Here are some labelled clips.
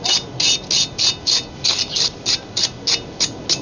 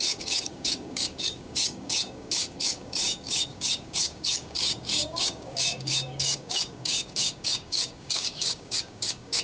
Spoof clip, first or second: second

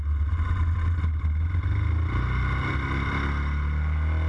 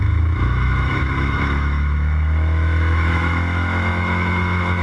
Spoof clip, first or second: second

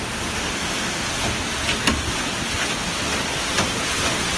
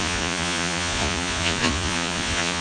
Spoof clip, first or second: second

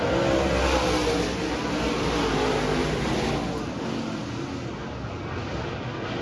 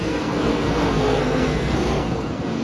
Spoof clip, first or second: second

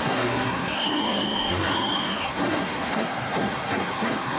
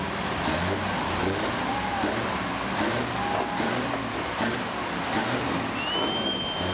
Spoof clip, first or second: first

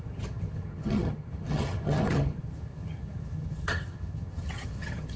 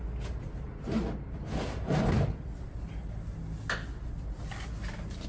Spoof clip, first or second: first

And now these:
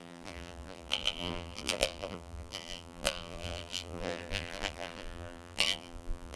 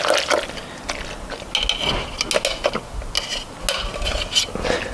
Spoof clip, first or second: first